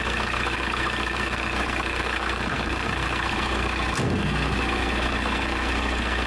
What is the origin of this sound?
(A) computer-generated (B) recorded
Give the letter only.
A